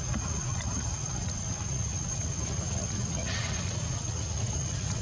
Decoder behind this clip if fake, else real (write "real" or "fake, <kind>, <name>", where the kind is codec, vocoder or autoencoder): fake, vocoder, Vocos